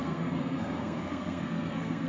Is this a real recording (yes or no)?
no